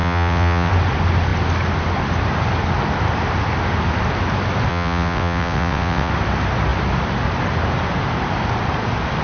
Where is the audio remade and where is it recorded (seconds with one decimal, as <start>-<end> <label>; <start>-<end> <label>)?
0.0-0.7 remade; 0.7-4.7 recorded; 4.7-6.1 remade; 6.1-9.2 recorded